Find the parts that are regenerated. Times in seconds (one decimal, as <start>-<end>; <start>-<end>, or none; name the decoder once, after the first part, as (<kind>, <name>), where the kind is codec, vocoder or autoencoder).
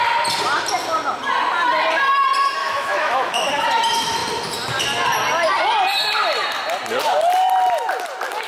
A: 2.6-3.5 (autoencoder, DAC-VAE)